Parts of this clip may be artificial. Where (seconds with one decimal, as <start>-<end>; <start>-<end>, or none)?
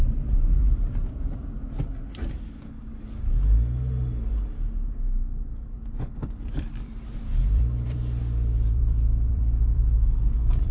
6.1-10.7